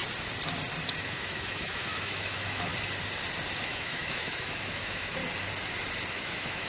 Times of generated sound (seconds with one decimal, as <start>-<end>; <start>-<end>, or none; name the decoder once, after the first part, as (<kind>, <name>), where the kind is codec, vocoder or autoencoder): 1.0-2.7 (autoencoder, DAC-VAE); 3.6-5.2; 6.1-6.7